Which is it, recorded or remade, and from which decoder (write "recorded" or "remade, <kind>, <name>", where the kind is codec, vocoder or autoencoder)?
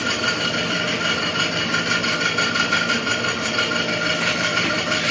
remade, vocoder, BigVGAN v2